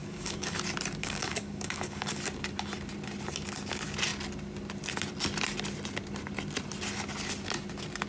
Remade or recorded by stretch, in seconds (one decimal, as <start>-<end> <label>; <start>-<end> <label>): 0.0-0.6 remade; 0.6-1.0 recorded; 1.0-2.2 remade; 2.2-8.1 recorded